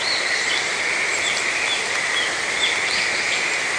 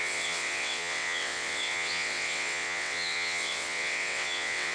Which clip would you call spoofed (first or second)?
second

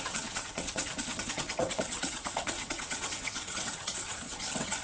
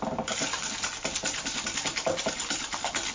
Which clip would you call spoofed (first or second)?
first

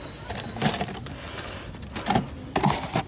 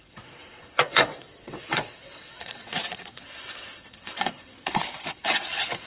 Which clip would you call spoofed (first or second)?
second